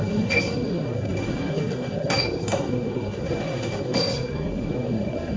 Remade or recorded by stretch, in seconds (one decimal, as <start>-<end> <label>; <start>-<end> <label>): 0.0-5.4 remade